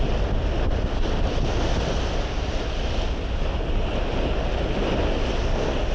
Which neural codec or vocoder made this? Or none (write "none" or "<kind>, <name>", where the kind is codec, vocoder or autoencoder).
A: none